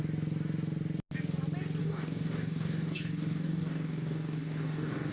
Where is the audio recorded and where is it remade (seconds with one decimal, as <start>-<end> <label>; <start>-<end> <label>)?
0.0-1.8 recorded; 1.8-5.1 remade